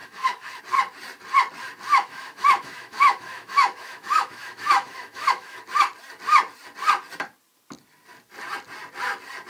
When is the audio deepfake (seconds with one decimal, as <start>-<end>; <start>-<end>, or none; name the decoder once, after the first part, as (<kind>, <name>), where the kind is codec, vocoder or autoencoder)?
0.0-0.6 (autoencoder, DAC-VAE); 1.9-5.6